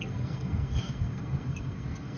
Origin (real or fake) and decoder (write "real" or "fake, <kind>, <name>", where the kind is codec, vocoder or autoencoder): fake, codec, SNAC